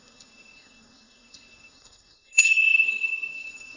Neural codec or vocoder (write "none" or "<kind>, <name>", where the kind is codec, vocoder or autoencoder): codec, SNAC